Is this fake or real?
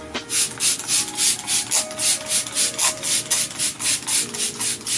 real